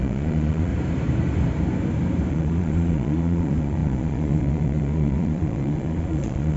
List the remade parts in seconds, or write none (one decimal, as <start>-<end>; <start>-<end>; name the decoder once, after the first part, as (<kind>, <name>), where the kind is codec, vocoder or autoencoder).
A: 0.0-0.7 (vocoder, Vocos); 2.3-6.6